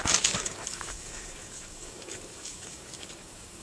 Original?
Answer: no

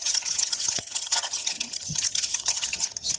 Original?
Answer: no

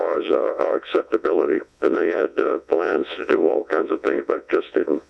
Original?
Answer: no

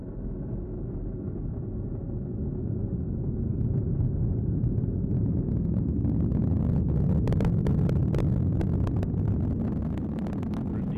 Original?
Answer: yes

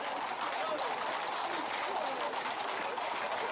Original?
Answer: yes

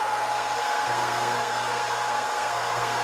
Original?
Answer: no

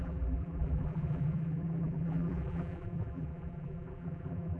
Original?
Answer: no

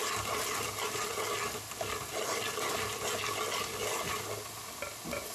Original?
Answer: yes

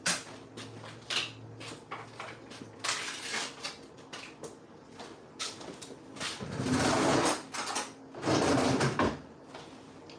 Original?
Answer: yes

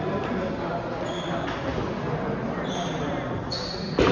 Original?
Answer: yes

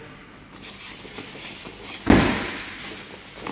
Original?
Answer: yes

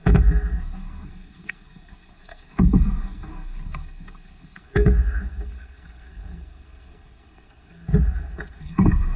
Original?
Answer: no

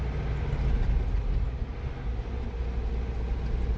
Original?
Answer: yes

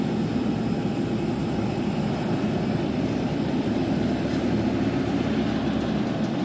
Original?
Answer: yes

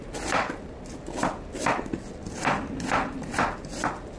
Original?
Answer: yes